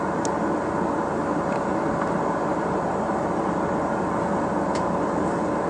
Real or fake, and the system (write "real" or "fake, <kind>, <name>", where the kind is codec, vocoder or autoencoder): real